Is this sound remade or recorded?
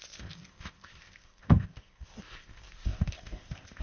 remade